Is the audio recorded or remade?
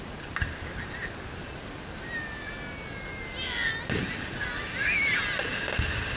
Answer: recorded